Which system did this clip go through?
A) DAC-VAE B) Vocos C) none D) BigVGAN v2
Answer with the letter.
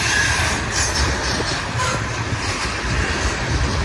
C